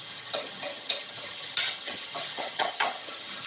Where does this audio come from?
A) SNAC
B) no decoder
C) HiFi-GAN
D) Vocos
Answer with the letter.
C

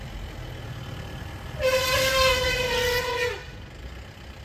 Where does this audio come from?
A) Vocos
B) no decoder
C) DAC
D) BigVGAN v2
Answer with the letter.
B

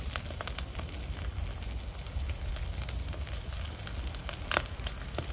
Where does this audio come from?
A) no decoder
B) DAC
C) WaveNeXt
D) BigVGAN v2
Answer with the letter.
A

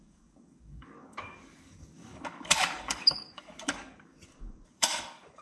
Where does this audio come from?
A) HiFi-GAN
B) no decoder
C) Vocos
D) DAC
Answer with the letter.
D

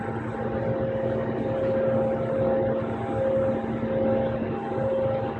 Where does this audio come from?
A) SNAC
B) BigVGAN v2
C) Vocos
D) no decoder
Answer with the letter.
D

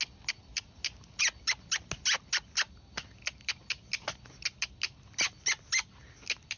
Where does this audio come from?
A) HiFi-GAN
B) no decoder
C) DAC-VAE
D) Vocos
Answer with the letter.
B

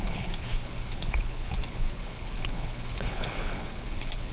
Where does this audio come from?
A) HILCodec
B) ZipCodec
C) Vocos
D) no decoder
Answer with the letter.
A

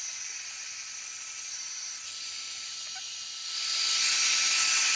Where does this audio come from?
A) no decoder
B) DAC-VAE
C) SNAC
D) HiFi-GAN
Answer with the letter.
A